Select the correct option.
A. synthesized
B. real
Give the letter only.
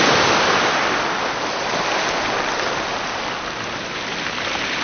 B